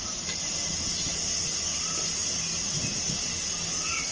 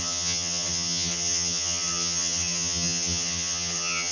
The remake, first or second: second